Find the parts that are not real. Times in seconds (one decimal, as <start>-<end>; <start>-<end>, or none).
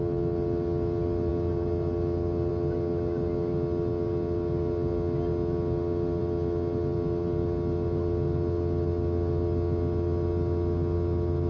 none